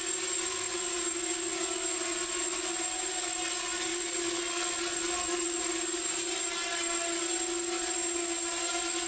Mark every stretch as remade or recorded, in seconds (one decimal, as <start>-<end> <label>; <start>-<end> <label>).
0.0-3.9 recorded; 3.9-5.6 remade; 5.6-9.1 recorded